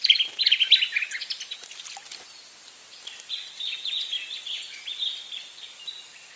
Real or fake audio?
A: real